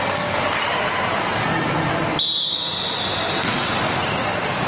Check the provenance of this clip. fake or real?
real